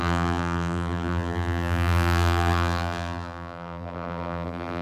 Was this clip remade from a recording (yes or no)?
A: yes